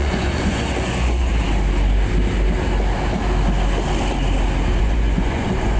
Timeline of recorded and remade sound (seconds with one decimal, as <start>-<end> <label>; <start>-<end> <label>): 0.0-1.3 remade; 1.3-4.8 recorded; 4.8-5.8 remade